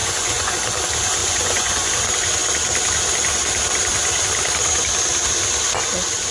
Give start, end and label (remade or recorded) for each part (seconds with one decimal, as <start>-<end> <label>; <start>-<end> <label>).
0.0-0.5 remade; 0.5-1.2 recorded; 1.2-1.9 remade; 1.9-6.3 recorded